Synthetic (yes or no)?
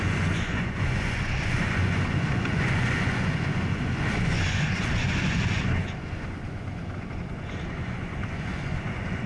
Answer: yes